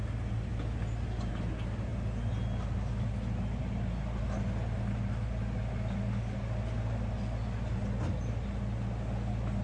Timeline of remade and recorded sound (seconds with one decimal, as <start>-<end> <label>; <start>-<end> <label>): 0.0-9.6 recorded